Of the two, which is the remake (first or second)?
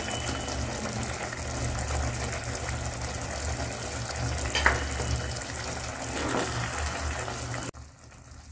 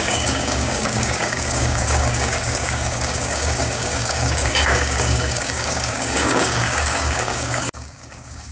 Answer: second